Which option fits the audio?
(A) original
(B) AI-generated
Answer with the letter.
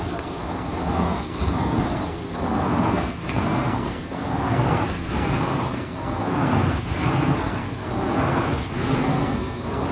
B